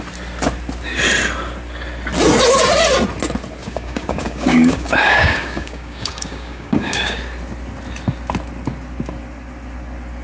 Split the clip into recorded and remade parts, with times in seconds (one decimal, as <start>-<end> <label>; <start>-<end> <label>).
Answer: 0.0-3.6 recorded; 3.6-7.2 remade; 7.2-10.2 recorded